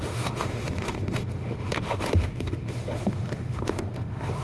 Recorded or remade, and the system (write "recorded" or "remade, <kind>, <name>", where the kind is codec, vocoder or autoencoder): remade, autoencoder, DAC-VAE